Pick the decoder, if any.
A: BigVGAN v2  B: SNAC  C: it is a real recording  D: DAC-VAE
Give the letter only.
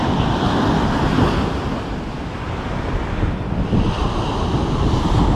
C